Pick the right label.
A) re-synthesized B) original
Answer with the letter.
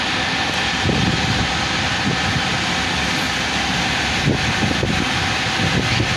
B